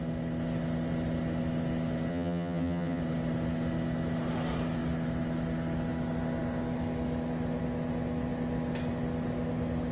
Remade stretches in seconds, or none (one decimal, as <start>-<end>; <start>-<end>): 2.1-3.0